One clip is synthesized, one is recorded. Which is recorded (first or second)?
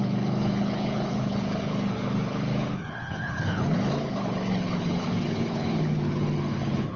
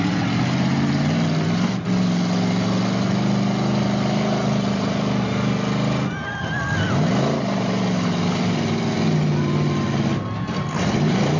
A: second